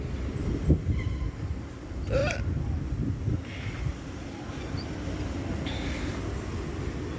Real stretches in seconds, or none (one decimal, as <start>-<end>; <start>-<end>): 0.0-7.2